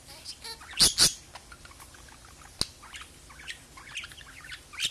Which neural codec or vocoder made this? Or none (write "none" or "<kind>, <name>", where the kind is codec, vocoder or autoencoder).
none